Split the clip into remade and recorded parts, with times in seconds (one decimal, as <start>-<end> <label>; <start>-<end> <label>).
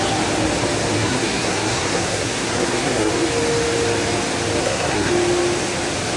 0.0-1.0 recorded; 1.0-3.1 remade; 3.1-4.6 recorded; 4.6-5.1 remade; 5.1-6.2 recorded